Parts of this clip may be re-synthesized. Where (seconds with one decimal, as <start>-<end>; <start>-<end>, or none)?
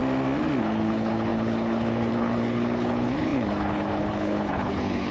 0.6-5.1